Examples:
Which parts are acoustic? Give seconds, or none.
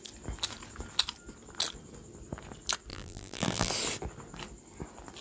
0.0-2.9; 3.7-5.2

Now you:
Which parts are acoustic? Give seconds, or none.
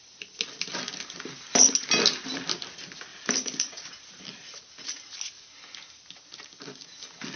0.0-3.1; 4.6-7.4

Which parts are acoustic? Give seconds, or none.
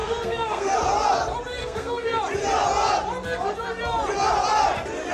0.7-1.6; 2.2-5.1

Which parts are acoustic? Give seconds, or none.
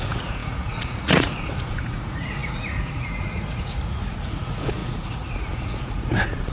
none